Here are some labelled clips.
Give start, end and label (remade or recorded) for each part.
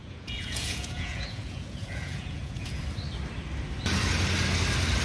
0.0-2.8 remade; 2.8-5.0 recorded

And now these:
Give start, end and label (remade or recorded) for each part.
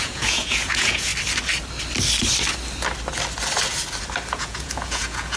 0.0-1.1 remade; 1.1-4.3 recorded; 4.3-5.4 remade